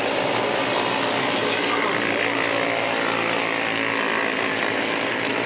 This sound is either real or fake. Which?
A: fake